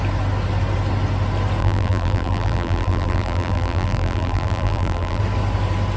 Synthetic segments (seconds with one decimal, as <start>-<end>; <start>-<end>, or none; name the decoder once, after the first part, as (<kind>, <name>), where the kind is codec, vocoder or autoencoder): 1.6-5.2 (vocoder, BigVGAN v2)